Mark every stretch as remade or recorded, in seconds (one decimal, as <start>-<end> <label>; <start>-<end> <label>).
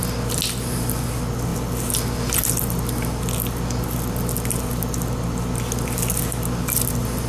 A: 0.0-7.3 recorded